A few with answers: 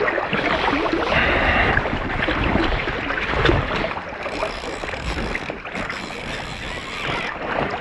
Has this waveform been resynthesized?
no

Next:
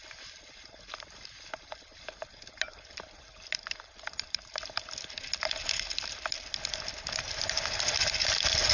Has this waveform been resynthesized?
no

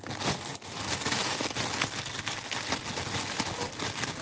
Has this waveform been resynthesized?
no